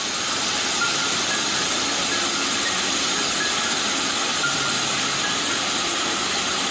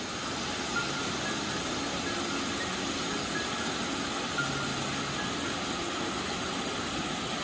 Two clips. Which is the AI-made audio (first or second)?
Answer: first